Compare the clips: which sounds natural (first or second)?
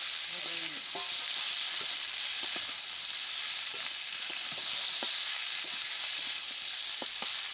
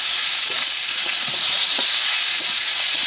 first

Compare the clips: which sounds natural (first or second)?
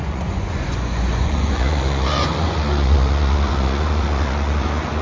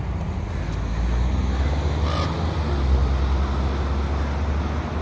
second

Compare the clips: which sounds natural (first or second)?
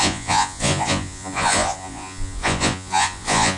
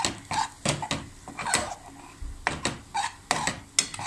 second